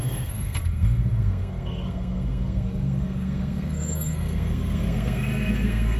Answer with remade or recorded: remade